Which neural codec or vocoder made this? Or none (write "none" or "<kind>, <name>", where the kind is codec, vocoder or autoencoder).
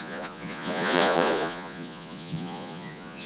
vocoder, Vocos